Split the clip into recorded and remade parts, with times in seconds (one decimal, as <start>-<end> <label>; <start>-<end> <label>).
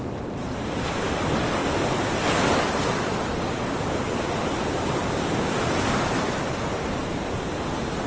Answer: 0.0-5.0 recorded; 5.0-5.7 remade; 5.7-8.1 recorded